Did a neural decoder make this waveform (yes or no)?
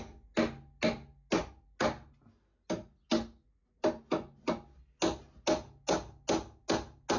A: no